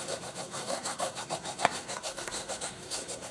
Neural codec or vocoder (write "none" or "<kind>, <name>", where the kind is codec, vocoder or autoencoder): codec, SNAC